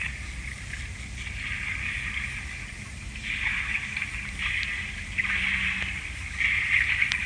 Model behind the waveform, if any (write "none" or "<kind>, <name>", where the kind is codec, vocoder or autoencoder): none